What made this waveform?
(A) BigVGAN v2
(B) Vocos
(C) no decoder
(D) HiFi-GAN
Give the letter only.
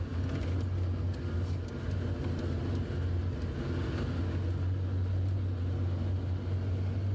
C